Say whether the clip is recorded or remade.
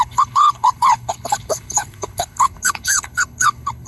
remade